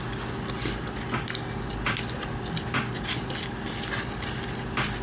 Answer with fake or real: real